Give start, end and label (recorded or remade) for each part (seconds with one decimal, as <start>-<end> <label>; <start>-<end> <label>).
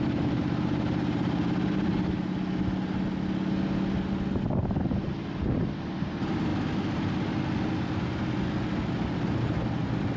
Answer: 0.0-1.9 remade; 1.9-6.0 recorded; 6.0-6.5 remade; 6.5-10.2 recorded